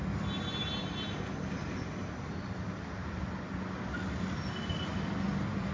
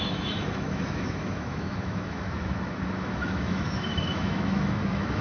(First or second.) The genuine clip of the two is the first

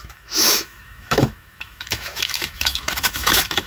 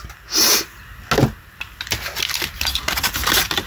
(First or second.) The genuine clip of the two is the second